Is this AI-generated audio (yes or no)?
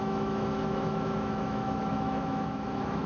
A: yes